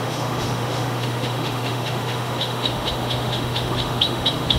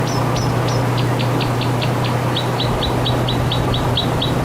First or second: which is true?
second